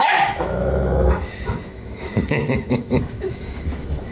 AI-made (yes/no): yes